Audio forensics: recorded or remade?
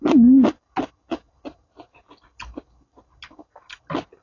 recorded